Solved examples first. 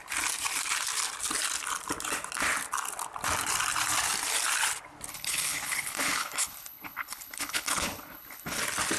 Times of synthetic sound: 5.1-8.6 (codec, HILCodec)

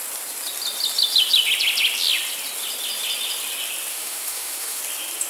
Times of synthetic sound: 3.9-4.8 (autoencoder, DAC-VAE)

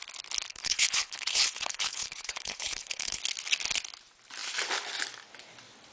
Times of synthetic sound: 0.5-3.2 (codec, HILCodec)

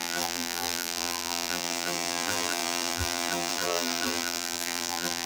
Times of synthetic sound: 0.0-5.3 (vocoder, BigVGAN v2)

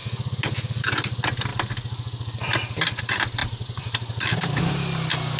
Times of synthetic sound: 3.4-4.8 (vocoder, BigVGAN v2)